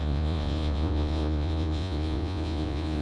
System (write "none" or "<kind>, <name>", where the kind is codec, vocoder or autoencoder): vocoder, Vocos